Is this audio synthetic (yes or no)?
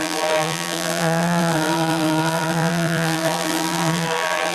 yes